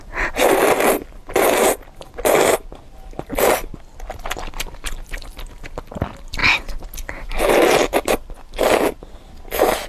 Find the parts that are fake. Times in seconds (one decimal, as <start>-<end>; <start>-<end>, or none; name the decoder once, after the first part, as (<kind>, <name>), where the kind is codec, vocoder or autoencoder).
none